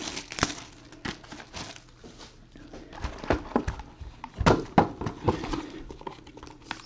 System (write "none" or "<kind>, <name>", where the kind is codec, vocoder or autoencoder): none